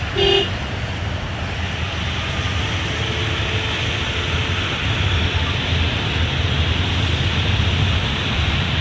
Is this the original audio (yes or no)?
yes